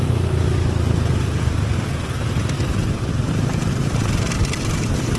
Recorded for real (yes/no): yes